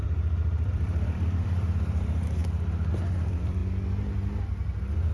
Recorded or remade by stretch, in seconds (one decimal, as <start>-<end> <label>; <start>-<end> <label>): 0.0-2.4 remade; 2.4-2.9 recorded; 2.9-3.6 remade; 3.6-5.1 recorded